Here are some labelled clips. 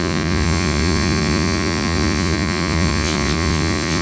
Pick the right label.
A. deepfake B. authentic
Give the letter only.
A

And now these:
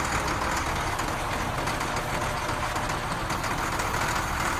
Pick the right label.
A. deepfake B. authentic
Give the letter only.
B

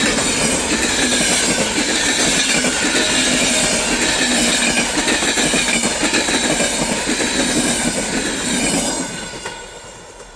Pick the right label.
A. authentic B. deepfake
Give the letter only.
A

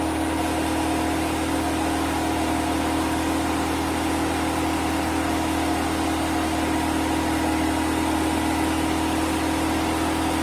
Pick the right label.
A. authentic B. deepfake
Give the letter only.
A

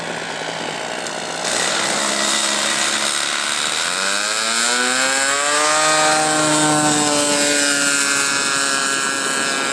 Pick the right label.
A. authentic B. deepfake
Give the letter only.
A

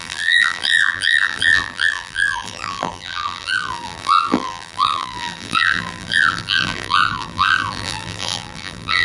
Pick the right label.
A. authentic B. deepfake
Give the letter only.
B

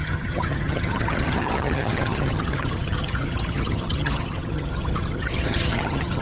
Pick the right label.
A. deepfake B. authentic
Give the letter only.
A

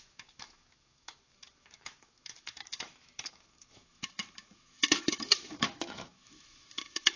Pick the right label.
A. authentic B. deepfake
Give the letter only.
B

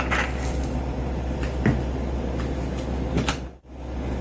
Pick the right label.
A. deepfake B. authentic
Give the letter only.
B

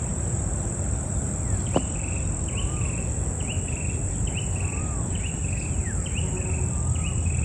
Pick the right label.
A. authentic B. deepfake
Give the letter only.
A